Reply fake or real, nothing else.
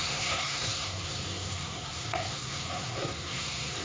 fake